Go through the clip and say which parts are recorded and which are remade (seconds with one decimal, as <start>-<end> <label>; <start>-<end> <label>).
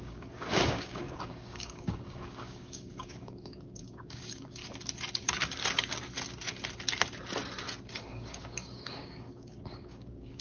0.0-4.6 remade; 4.6-7.9 recorded; 7.9-10.4 remade